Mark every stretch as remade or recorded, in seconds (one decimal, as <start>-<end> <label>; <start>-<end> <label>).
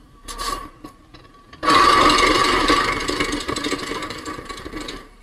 0.0-1.1 remade; 1.1-2.0 recorded; 2.0-5.2 remade